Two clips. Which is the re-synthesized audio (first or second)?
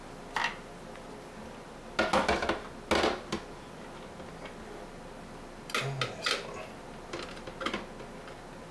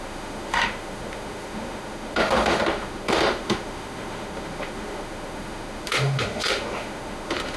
second